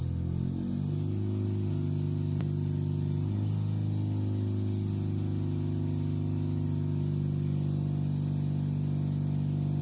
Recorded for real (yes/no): yes